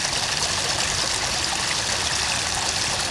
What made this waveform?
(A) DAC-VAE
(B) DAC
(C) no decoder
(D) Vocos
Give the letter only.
C